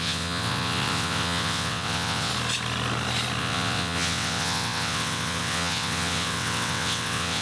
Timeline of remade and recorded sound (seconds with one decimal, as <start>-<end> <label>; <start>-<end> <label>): 0.0-2.3 remade; 2.3-3.4 recorded; 3.4-7.4 remade